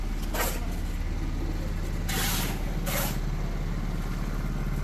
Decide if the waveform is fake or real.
real